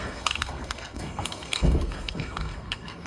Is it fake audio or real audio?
fake